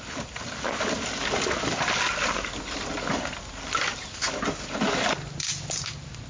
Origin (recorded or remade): recorded